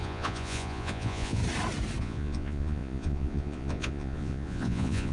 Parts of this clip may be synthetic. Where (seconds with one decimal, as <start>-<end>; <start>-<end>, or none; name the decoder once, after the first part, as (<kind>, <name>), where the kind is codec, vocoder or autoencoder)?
0.0-1.4 (vocoder, Vocos); 2.0-5.1

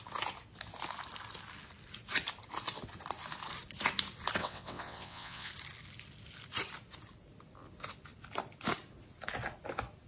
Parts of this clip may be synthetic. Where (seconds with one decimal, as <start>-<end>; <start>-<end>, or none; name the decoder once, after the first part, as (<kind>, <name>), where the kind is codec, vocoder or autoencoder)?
4.4-5.5 (vocoder, WaveNeXt)

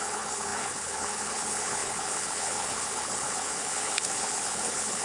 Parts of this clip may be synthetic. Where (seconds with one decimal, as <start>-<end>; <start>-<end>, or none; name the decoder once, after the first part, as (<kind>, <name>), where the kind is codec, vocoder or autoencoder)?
0.0-5.0 (codec, HILCodec)